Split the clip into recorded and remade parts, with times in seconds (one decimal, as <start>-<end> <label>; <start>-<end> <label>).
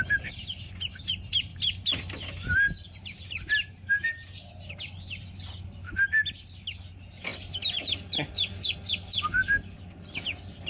0.0-10.7 recorded